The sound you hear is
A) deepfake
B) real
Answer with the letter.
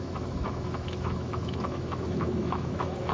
A